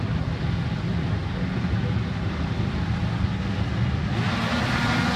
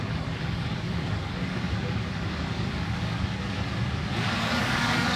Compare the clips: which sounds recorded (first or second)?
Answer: first